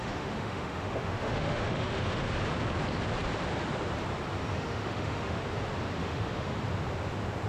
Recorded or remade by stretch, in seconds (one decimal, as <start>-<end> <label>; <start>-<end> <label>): 0.0-2.3 remade; 2.3-4.5 recorded; 4.5-5.4 remade; 5.4-6.0 recorded; 6.0-6.6 remade; 6.6-7.5 recorded